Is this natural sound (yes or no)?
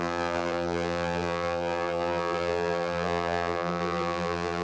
no